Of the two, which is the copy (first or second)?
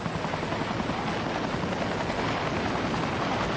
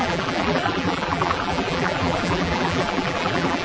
second